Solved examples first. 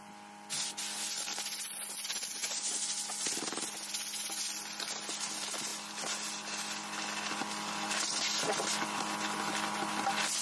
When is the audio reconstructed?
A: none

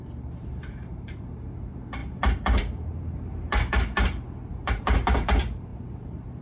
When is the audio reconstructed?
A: 0.0-6.4

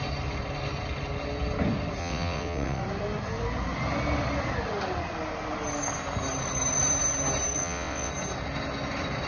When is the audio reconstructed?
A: 2.0-2.8; 7.6-8.1

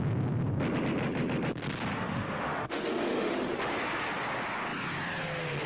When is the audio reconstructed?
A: 1.9-3.6

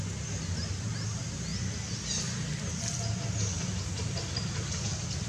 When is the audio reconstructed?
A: none

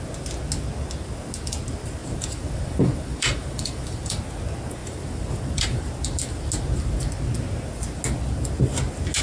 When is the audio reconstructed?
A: 2.0-4.2; 4.8-5.9